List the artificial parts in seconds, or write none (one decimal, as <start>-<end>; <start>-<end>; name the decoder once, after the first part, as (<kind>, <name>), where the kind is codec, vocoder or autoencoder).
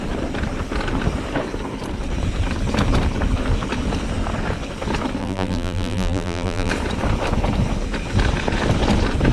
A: 5.2-6.7 (vocoder, BigVGAN v2)